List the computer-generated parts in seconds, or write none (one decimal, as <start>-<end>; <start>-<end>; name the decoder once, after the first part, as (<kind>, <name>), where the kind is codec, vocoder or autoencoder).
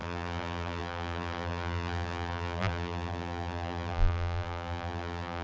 0.0-5.4 (vocoder, BigVGAN v2)